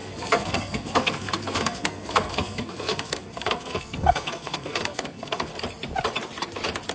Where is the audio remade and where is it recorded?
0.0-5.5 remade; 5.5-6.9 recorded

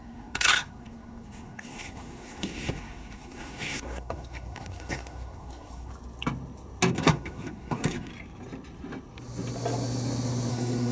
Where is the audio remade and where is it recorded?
0.0-5.9 remade; 5.9-6.9 recorded; 6.9-8.1 remade; 8.1-10.5 recorded; 10.5-10.9 remade

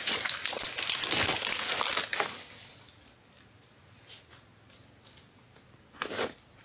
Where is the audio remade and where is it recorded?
0.0-6.6 recorded

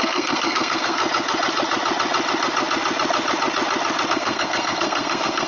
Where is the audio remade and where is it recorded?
0.0-1.0 remade; 1.0-4.1 recorded; 4.1-5.5 remade